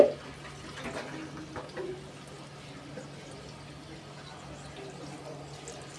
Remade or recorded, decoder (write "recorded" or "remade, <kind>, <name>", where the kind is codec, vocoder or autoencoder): recorded